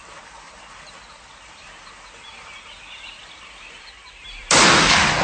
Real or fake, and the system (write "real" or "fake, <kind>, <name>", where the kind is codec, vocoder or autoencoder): real